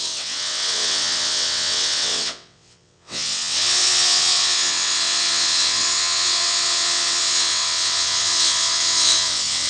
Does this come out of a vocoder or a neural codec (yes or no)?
yes